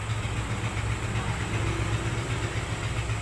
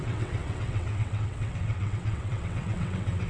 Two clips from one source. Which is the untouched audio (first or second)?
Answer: first